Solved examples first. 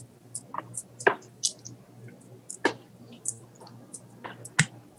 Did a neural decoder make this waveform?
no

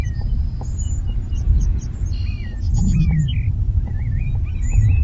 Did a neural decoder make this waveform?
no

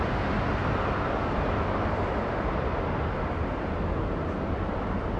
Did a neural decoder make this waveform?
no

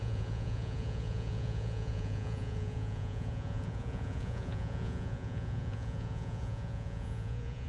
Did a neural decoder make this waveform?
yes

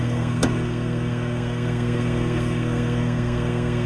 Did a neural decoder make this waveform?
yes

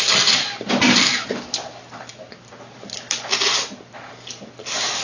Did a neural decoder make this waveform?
no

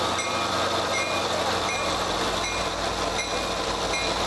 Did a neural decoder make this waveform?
yes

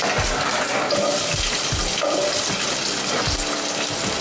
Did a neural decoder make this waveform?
no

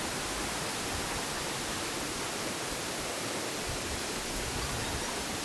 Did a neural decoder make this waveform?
no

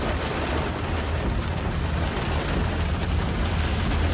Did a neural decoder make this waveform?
no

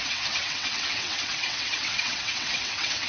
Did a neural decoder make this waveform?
yes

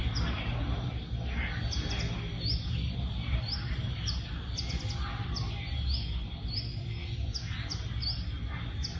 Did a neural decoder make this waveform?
no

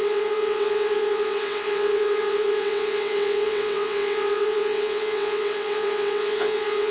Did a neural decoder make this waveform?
yes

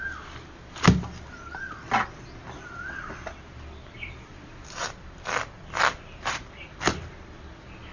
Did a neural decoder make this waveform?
no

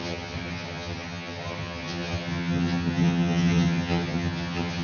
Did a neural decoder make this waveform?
yes